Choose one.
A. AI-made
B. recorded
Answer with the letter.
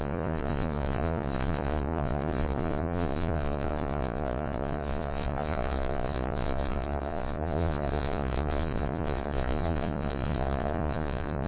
A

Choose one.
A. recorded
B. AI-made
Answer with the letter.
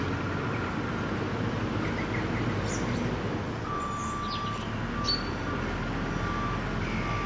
A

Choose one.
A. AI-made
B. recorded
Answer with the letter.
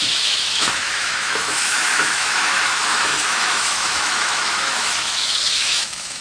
A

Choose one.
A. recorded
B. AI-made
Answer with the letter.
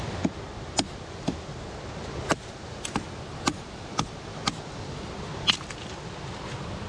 A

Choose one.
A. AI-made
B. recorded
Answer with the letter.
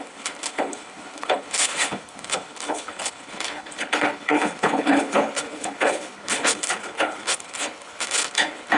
A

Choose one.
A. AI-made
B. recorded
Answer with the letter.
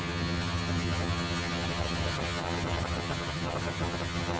A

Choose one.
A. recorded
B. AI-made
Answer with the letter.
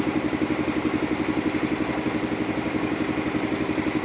A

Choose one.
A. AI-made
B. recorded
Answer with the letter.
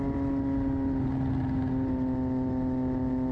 B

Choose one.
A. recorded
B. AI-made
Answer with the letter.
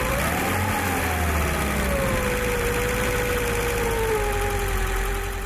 A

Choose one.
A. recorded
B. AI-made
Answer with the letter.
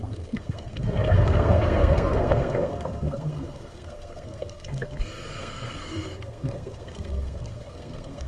B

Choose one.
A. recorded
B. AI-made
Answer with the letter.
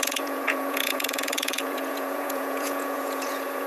B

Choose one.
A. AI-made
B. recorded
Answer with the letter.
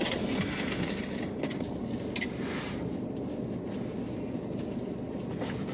B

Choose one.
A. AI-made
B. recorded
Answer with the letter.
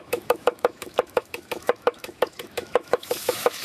A